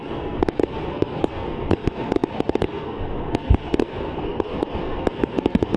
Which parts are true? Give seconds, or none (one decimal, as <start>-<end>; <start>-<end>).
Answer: none